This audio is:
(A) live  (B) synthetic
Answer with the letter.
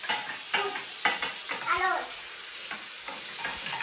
A